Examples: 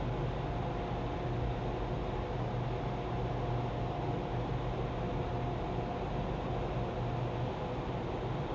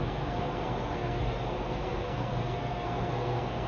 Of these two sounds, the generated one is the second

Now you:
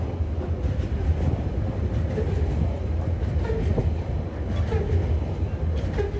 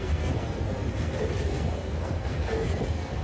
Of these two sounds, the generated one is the second